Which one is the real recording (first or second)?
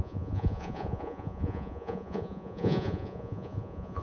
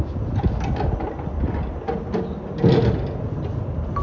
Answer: second